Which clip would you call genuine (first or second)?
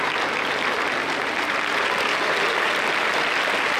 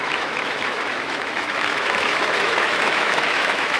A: first